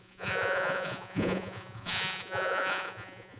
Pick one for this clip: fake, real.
fake